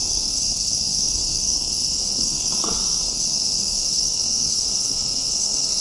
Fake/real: fake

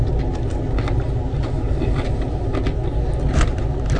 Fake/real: real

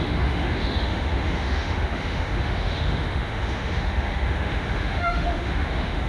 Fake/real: fake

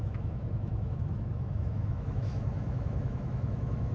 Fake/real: fake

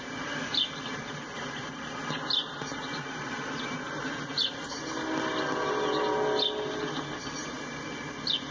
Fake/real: real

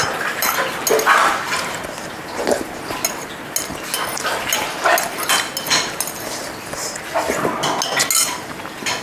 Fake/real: real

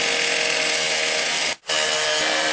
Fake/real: real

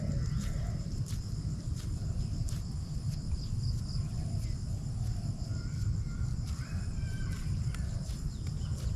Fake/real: real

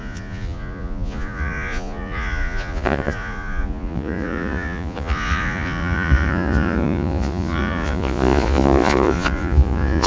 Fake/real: fake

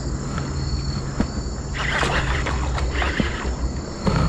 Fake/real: real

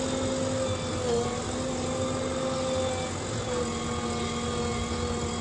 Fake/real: real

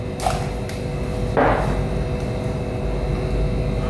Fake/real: real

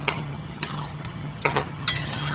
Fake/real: fake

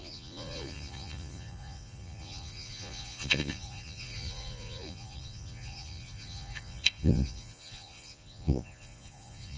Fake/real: fake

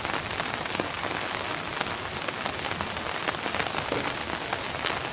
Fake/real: real